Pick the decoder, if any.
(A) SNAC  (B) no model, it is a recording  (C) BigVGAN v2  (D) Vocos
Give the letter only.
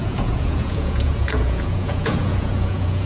D